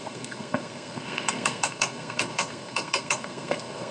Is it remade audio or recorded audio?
remade